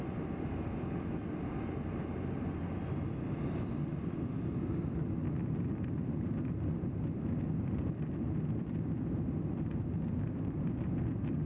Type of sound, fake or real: real